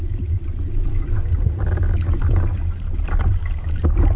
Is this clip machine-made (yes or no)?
no